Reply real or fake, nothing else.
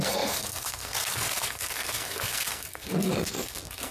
fake